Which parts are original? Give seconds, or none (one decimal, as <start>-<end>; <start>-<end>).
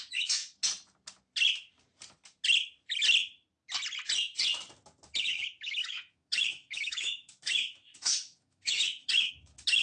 0.4-5.2